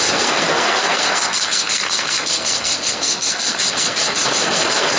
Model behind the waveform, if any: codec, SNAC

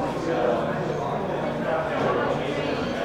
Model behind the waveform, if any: none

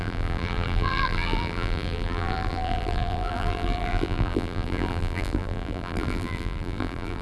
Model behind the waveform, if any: vocoder, BigVGAN v2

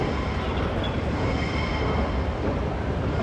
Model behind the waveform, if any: none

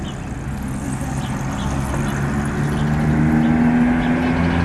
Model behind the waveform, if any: none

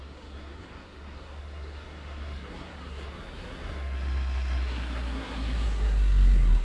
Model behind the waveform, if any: codec, SNAC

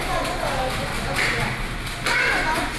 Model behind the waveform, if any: none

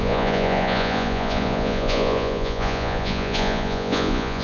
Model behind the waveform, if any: vocoder, Vocos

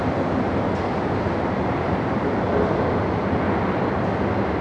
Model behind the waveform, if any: none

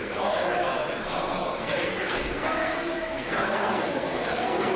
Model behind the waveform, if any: codec, SNAC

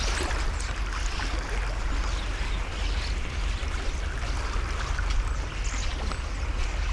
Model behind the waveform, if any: none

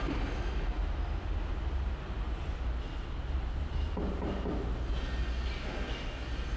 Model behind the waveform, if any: none